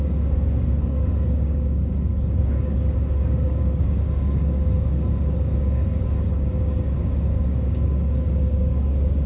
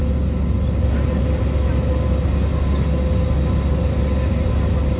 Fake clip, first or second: first